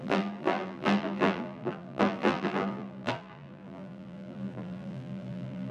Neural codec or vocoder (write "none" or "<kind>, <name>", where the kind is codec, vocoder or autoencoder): vocoder, BigVGAN v2